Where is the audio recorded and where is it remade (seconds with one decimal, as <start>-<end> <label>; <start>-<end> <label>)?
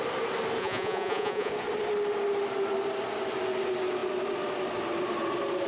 0.0-0.6 recorded; 0.6-1.5 remade; 1.5-5.7 recorded